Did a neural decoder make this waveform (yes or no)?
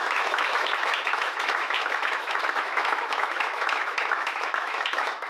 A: yes